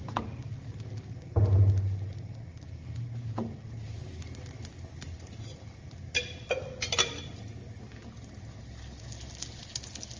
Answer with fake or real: real